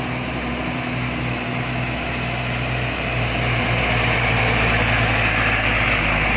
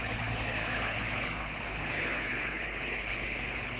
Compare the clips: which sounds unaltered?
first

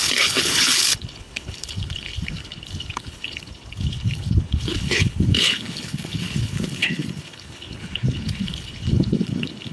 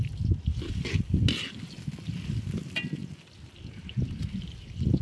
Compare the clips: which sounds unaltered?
second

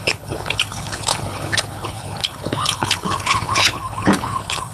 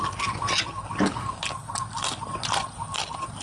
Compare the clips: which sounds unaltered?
second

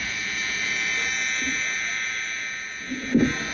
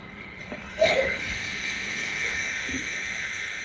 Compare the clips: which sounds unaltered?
first